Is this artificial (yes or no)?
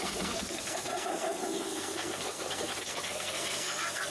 yes